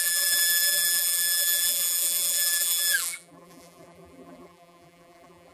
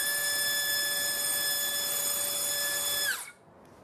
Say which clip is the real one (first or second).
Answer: second